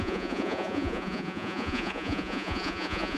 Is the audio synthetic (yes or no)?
yes